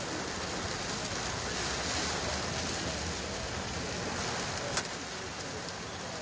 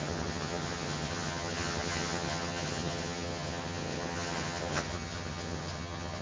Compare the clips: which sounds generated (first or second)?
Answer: second